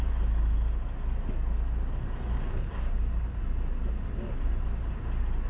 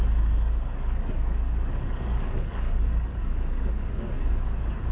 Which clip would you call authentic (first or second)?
first